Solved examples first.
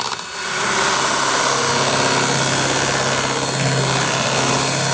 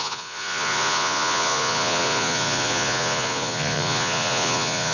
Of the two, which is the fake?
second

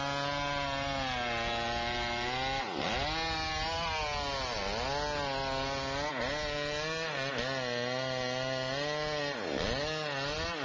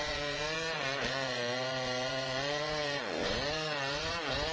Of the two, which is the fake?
second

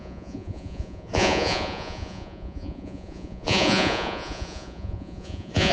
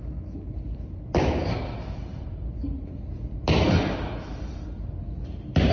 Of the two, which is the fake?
first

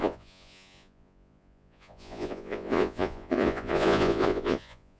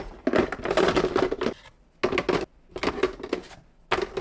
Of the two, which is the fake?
first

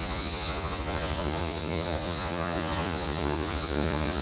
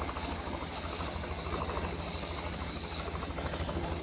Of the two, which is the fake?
first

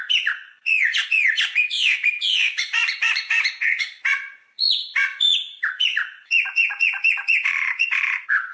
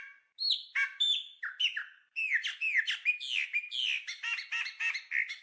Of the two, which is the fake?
first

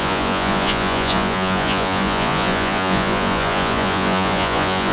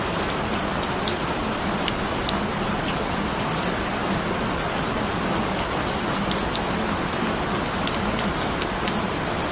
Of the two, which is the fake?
first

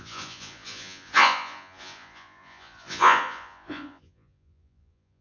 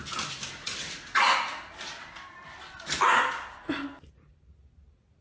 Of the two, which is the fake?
first